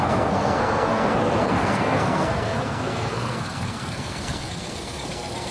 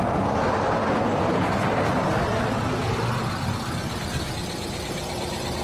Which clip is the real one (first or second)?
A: second